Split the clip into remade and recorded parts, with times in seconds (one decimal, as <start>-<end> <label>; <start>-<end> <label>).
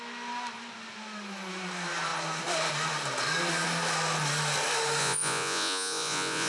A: 0.0-5.0 recorded; 5.0-6.5 remade